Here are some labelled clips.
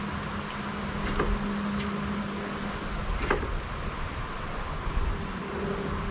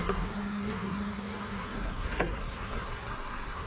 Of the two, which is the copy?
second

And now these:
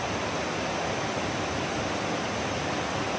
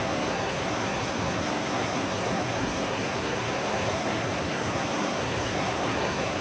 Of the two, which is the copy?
second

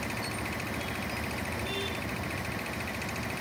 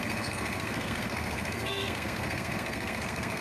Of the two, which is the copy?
second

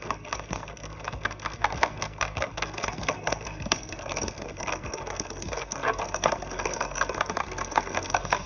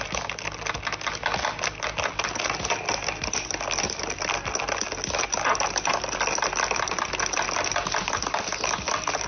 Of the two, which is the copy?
first